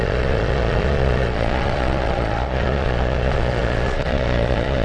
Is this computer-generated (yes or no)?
yes